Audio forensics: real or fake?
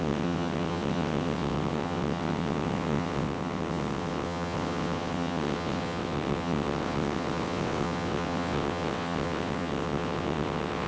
fake